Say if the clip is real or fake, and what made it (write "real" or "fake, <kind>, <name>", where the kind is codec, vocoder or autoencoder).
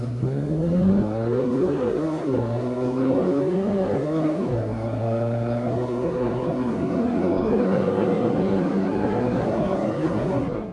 fake, codec, SNAC